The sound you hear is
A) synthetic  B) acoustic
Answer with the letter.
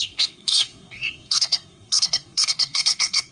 A